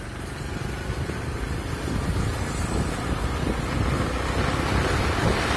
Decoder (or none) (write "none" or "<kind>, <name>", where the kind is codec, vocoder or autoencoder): none